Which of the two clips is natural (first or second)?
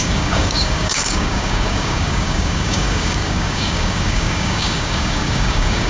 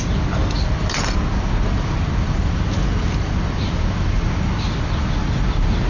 second